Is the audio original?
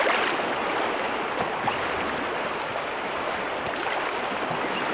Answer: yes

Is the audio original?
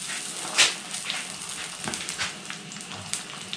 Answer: yes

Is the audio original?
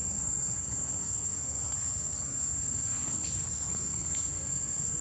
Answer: no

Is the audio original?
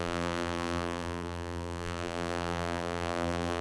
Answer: no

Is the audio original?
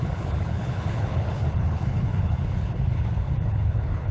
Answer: no